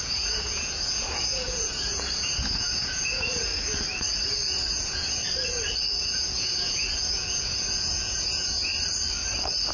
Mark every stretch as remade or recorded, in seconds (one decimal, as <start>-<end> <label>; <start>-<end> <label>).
0.0-3.5 remade; 3.5-4.7 recorded; 4.7-5.2 remade; 5.2-6.0 recorded; 6.0-8.7 remade; 8.7-9.7 recorded